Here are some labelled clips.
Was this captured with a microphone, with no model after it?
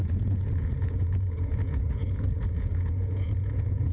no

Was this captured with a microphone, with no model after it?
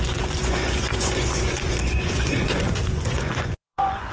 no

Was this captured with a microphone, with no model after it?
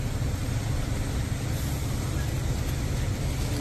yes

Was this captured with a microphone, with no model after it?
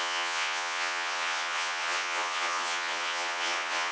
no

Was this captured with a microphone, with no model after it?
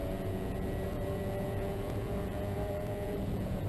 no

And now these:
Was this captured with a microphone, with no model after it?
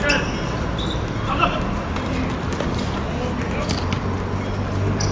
yes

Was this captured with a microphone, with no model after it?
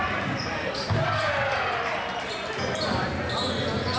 yes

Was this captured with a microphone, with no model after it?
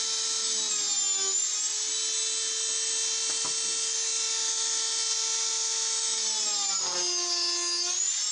yes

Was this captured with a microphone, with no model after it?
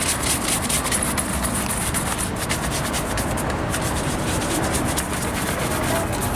yes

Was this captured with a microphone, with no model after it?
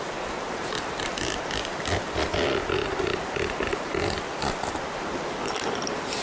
yes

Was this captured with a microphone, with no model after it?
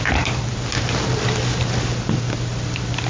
yes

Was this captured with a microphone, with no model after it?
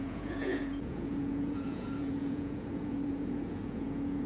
no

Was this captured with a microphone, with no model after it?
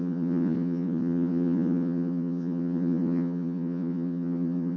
no